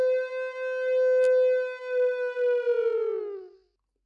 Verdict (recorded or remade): recorded